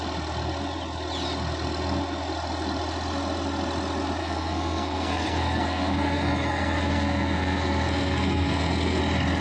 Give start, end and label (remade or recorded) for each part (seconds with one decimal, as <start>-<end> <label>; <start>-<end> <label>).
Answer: 0.0-4.2 recorded; 4.2-9.0 remade; 9.0-9.4 recorded